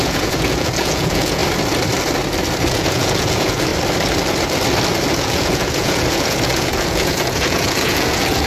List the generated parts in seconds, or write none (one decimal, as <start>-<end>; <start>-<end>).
0.0-1.4; 2.7-3.7; 5.1-8.5